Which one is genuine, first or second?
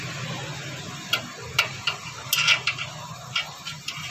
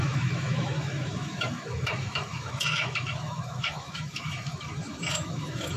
first